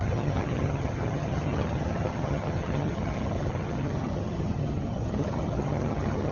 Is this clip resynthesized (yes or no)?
yes